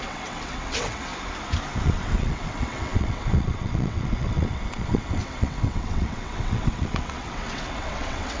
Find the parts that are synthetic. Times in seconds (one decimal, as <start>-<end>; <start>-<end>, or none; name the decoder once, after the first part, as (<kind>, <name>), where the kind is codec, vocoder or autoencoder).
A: 0.0-1.1 (vocoder, WaveNeXt); 1.8-8.4